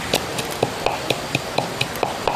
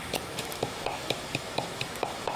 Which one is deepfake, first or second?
second